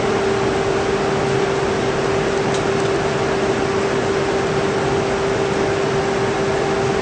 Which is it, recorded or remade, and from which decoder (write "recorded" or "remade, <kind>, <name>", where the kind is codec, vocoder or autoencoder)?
recorded